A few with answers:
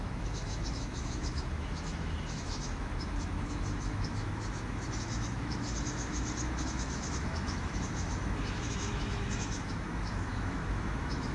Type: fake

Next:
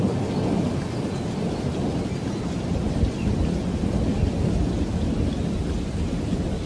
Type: real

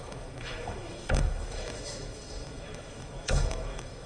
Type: fake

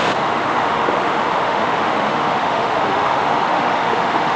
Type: fake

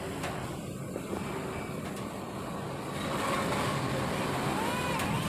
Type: real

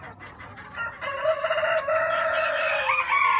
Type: real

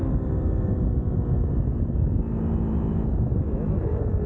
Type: real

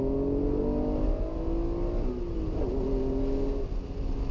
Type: real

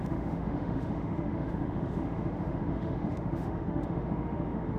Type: fake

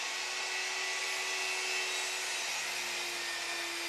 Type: real